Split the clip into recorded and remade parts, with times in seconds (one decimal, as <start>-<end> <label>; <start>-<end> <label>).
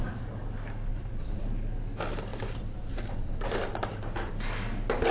0.0-0.9 recorded; 0.9-1.4 remade; 1.4-2.3 recorded; 2.3-4.3 remade; 4.3-5.1 recorded